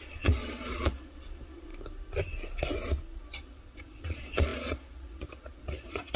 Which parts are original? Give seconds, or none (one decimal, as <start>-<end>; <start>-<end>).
1.7-3.2

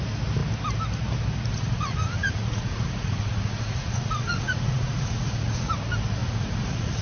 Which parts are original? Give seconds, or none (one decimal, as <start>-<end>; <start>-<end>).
0.0-1.5; 5.7-6.2